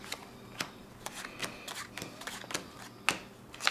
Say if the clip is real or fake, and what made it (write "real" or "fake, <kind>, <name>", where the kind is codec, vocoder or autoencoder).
real